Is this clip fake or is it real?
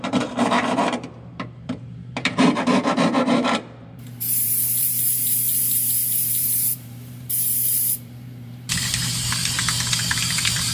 fake